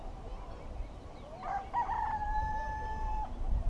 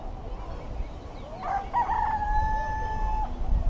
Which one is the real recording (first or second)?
second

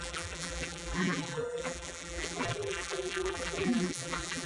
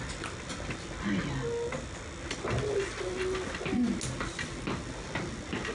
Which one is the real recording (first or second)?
second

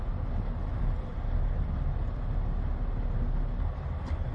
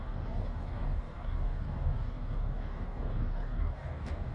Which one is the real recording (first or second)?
first